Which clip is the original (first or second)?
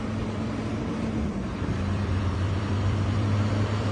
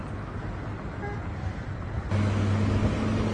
second